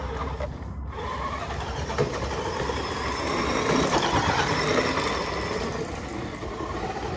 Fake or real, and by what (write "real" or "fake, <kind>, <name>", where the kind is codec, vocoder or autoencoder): real